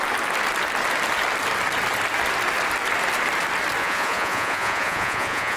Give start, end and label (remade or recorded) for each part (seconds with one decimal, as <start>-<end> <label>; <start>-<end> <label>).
0.0-3.8 recorded; 3.8-5.6 remade